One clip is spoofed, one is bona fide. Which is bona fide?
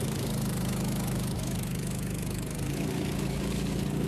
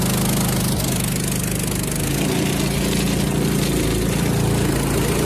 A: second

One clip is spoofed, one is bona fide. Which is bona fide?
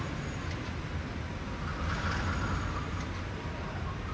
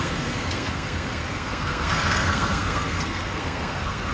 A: first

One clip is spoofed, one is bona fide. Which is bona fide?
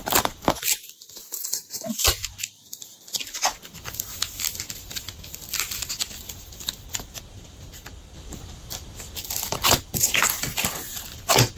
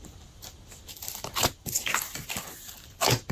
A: second